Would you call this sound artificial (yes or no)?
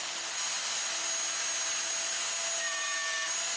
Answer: no